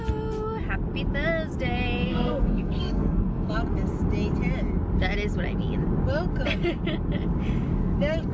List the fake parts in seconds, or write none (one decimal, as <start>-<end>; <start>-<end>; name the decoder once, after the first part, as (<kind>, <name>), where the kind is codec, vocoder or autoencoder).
2.1-3.5 (codec, SNAC)